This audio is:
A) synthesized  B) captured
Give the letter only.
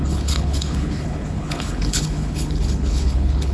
A